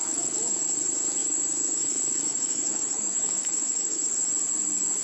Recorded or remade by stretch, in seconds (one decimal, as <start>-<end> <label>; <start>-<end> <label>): 0.0-0.6 remade; 0.6-1.2 recorded; 1.2-4.0 remade; 4.0-5.0 recorded